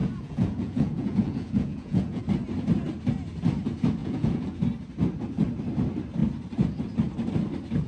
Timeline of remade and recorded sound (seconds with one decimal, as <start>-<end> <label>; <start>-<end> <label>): 0.0-2.2 remade; 2.2-4.0 recorded; 4.0-4.6 remade; 4.6-7.9 recorded